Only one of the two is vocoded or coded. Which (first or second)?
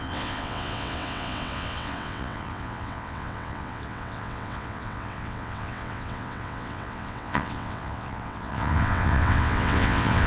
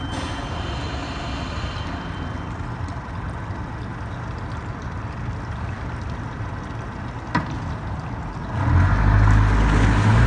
first